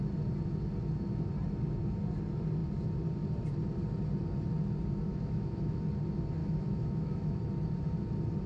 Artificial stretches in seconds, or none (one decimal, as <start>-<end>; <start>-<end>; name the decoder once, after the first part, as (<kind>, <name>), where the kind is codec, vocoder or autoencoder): 5.1-5.8 (autoencoder, DAC-VAE); 6.4-7.4